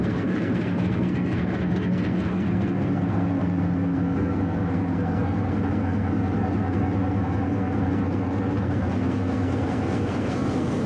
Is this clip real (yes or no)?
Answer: no